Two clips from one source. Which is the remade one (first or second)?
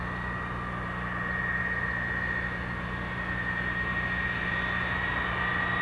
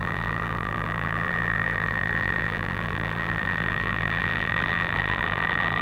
second